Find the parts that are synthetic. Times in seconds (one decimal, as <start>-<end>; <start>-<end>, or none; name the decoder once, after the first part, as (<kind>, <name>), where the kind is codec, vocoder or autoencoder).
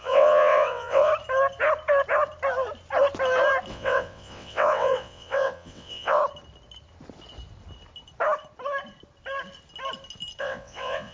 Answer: 0.0-1.1 (vocoder, WaveNeXt); 3.7-6.2; 10.4-11.1